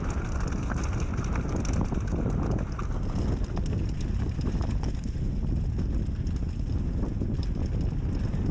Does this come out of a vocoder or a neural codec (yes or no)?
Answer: no